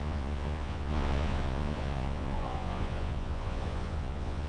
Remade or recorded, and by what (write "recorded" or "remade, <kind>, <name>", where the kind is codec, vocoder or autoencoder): remade, vocoder, Vocos